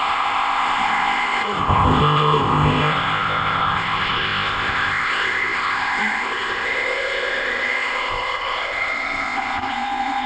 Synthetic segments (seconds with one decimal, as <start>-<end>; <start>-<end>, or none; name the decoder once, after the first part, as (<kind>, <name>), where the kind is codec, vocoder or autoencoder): 0.0-10.3 (codec, ZipCodec)